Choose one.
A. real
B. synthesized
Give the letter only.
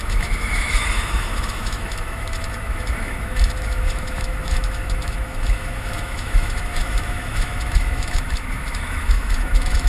B